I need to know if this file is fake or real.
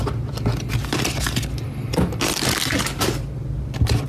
real